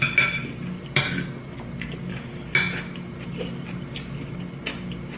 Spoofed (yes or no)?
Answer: no